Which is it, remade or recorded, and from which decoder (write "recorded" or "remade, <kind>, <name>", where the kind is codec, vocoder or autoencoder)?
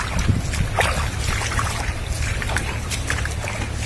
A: recorded